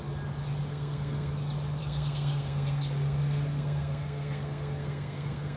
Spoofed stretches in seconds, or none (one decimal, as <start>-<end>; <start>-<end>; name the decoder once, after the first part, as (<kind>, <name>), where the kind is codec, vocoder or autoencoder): 0.7-1.3 (codec, SNAC); 1.8-5.6